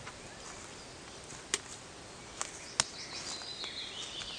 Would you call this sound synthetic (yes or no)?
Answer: no